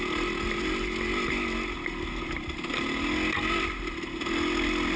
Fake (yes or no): no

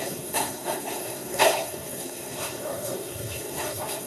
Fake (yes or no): yes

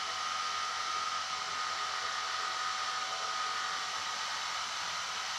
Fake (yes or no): no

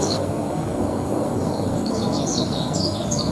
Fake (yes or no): yes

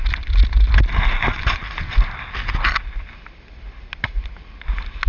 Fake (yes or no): no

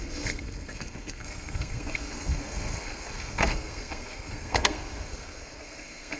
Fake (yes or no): yes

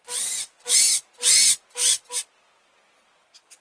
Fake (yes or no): no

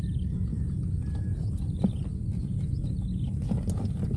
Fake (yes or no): no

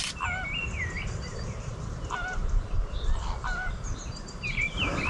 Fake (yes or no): yes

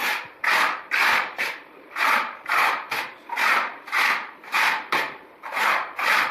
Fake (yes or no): yes